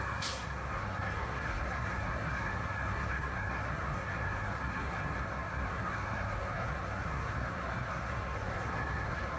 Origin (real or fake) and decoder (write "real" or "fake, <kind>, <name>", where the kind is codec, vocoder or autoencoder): fake, codec, SNAC